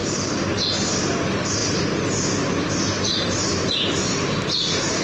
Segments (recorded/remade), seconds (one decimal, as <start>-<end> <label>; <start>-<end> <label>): 0.0-5.0 recorded